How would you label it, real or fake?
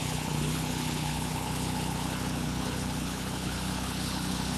fake